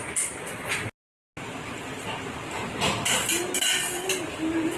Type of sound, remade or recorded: recorded